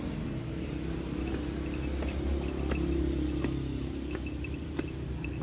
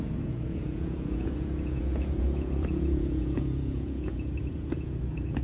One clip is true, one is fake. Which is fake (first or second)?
second